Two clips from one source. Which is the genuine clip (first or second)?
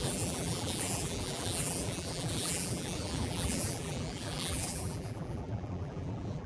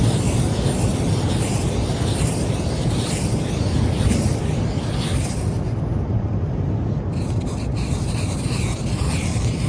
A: second